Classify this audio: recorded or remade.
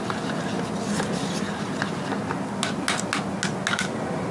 recorded